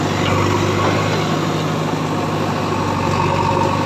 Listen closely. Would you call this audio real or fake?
real